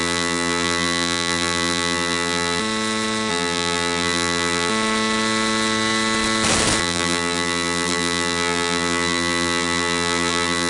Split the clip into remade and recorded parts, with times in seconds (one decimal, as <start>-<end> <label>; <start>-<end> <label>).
0.0-2.6 remade; 2.6-3.3 recorded; 3.3-4.7 remade; 4.7-6.8 recorded; 6.8-10.7 remade